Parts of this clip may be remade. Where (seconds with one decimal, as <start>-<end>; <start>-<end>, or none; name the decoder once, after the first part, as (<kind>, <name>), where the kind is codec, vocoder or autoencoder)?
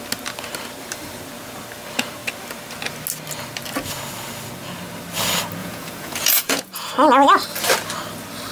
5.6-6.9 (vocoder, Vocos)